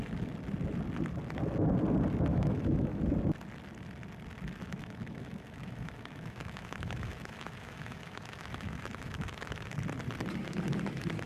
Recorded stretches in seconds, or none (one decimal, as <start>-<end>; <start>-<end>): 0.0-2.3; 3.0-4.6; 9.8-11.3